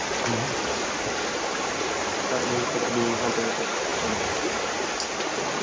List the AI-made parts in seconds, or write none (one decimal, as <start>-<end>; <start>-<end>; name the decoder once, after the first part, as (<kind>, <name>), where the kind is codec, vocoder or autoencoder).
3.9-4.5 (vocoder, BigVGAN v2)